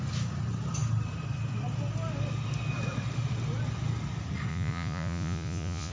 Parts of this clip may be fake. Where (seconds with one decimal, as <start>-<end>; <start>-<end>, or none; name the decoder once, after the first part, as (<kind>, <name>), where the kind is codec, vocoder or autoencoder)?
4.5-5.9 (vocoder, Vocos)